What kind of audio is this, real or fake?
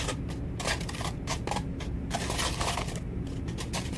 real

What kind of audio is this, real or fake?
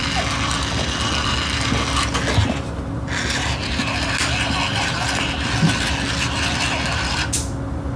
real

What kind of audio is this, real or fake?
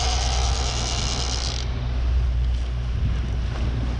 real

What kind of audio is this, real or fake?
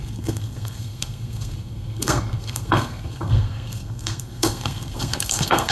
fake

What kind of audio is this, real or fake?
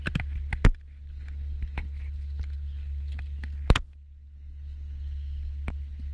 real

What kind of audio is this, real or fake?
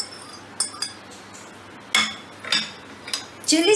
real